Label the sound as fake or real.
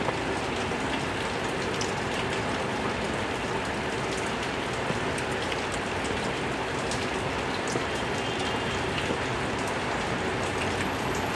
real